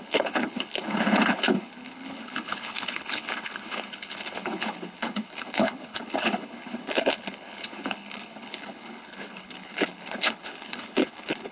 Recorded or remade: remade